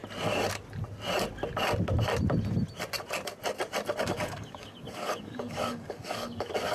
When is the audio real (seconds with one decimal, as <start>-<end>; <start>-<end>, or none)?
0.0-4.0